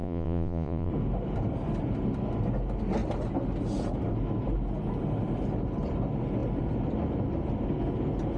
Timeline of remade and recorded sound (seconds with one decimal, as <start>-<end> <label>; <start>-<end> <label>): 0.0-0.9 remade; 0.9-8.4 recorded